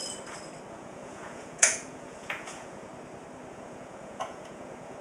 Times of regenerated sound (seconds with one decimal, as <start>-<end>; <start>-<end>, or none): 0.7-2.9; 3.5-5.0